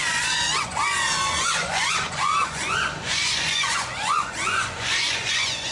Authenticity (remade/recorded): remade